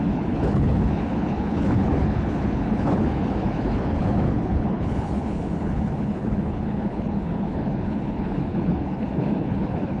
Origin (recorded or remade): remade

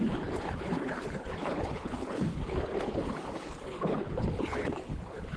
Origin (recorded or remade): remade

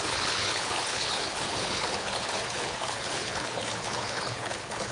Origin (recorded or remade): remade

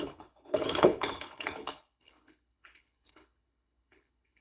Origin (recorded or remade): remade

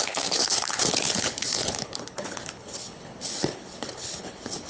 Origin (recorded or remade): remade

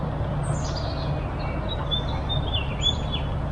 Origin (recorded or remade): recorded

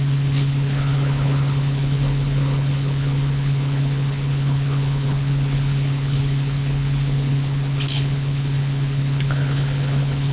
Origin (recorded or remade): remade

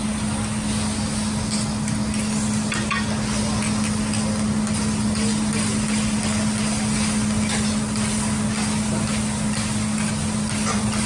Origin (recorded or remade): recorded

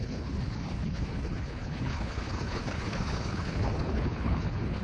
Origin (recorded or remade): remade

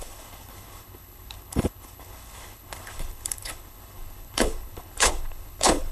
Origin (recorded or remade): remade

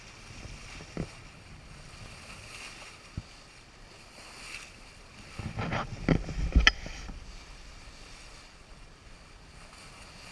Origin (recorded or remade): recorded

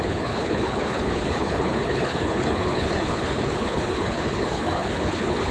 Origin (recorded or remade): remade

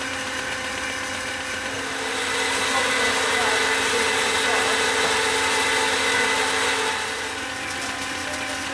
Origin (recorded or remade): recorded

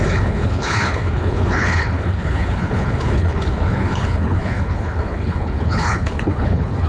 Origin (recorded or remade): remade